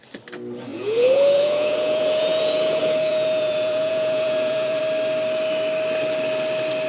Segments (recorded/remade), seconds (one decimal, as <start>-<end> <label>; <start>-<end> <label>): 0.0-0.7 recorded; 0.7-4.8 remade; 4.8-6.9 recorded

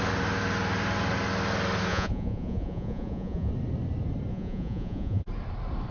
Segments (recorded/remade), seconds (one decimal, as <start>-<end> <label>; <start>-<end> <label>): 0.0-1.9 recorded; 1.9-3.5 remade; 3.5-4.3 recorded; 4.3-5.2 remade; 5.2-5.9 recorded

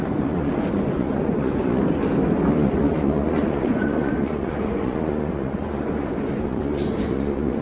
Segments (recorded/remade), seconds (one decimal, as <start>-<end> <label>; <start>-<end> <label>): 0.0-1.8 remade; 1.8-2.5 recorded; 2.5-7.6 remade

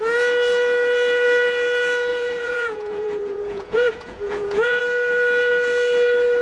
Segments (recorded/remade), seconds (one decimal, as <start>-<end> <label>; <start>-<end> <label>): 0.0-2.1 recorded; 2.1-4.8 remade; 4.8-6.4 recorded

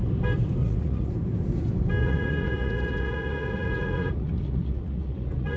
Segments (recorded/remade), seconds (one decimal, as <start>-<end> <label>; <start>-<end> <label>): 0.0-0.6 recorded; 0.6-1.1 remade; 1.1-2.0 recorded; 2.0-5.6 remade

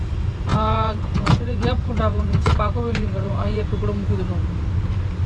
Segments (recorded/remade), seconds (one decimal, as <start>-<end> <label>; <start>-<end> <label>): 0.0-0.5 recorded; 0.5-3.7 remade; 3.7-5.3 recorded